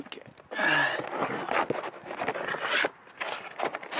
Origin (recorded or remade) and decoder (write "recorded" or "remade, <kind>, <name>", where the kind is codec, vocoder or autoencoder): recorded